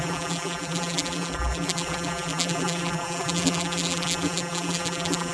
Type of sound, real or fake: fake